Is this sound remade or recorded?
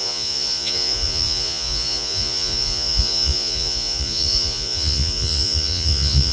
remade